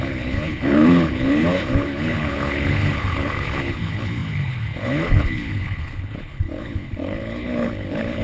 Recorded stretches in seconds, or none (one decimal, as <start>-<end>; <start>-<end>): none